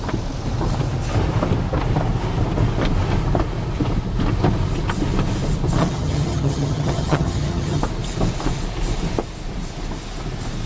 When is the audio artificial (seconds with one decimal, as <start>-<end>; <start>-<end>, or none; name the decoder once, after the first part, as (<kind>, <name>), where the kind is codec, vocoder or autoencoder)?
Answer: 5.8-7.8 (vocoder, HiFi-GAN)